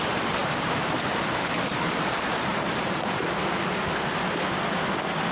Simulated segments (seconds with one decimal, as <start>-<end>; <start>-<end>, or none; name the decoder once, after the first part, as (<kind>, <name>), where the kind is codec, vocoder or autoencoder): 0.4-1.7 (vocoder, BigVGAN v2); 2.5-3.2